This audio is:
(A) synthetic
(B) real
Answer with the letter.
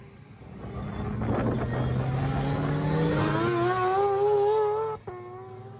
B